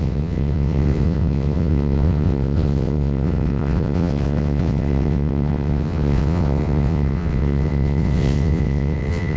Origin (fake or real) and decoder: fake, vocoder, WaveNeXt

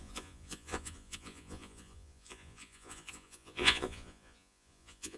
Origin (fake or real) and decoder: fake, vocoder, Vocos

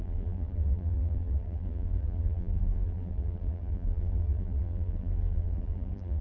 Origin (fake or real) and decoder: fake, vocoder, BigVGAN v2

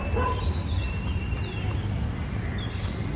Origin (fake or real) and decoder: fake, vocoder, BigVGAN v2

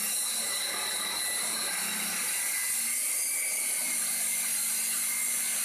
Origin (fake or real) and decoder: real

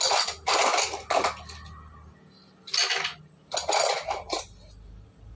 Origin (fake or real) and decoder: real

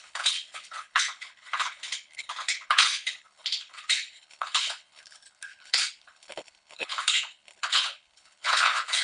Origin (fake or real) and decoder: fake, codec, HILCodec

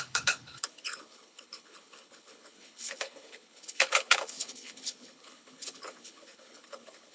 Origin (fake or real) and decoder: fake, codec, HILCodec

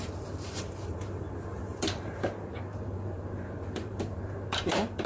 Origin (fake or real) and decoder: fake, vocoder, BigVGAN v2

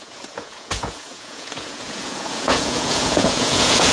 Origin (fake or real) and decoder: fake, vocoder, Vocos